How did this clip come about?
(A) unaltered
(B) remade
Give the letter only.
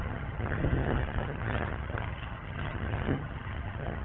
B